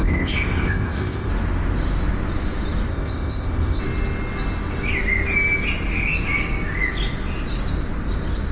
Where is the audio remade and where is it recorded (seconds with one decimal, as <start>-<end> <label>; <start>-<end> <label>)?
0.0-1.3 remade; 1.3-2.9 recorded; 2.9-3.8 remade; 3.8-8.5 recorded